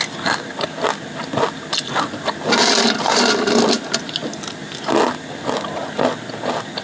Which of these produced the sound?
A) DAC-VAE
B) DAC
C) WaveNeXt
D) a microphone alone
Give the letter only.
D